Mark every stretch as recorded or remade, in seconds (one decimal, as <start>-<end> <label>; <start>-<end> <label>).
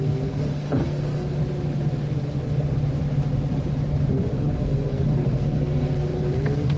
0.0-1.4 remade; 1.4-4.1 recorded; 4.1-6.8 remade